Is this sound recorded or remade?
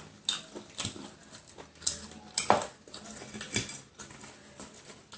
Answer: recorded